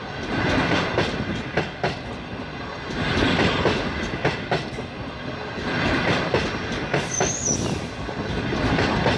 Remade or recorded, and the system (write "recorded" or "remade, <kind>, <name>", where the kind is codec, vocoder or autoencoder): recorded